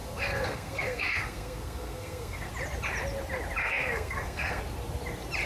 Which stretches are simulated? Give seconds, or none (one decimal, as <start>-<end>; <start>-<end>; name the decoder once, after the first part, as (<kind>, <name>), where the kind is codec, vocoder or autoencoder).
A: 0.0-2.5 (codec, SNAC); 3.6-4.6